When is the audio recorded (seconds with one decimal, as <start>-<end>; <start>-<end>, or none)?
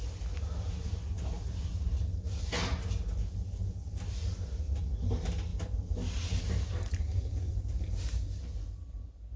0.0-9.4